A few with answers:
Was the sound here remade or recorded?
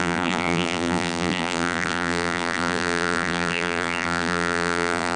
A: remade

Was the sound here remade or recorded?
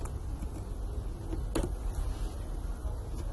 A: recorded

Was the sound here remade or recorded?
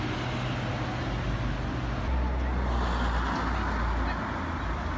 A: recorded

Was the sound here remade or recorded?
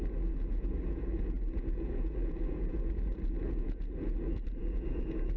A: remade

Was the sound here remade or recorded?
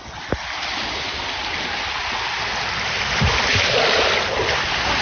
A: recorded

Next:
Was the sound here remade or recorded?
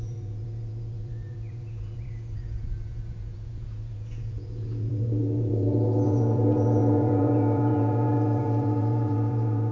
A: remade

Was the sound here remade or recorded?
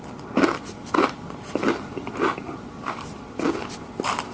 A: recorded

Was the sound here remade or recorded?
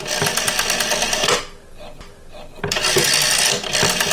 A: recorded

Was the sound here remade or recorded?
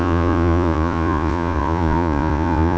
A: remade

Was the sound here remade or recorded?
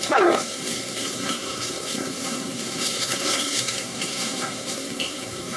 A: remade